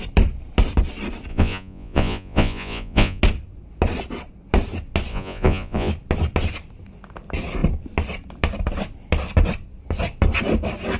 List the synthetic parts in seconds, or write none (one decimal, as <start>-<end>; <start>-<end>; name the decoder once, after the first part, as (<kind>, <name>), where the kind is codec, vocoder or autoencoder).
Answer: 1.3-3.2 (vocoder, Vocos); 5.1-5.9